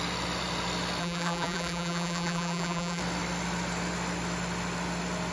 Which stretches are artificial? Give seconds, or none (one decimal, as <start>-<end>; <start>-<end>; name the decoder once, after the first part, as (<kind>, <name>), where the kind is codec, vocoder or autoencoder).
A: 1.0-3.0 (vocoder, BigVGAN v2)